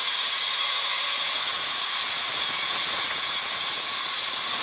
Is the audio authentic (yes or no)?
no